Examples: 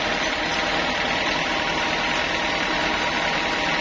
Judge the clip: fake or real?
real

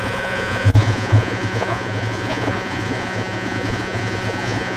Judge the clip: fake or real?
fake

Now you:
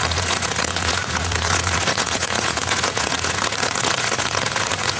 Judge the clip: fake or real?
fake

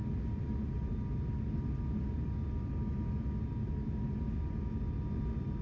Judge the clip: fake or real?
real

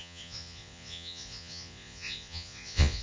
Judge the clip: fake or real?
fake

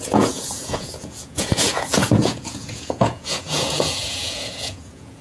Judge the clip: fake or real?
fake